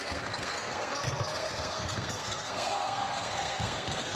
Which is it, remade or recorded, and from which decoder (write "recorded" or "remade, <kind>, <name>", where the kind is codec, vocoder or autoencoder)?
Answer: remade, codec, SNAC